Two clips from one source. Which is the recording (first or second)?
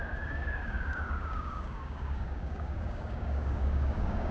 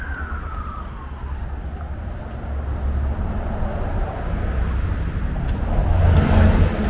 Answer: second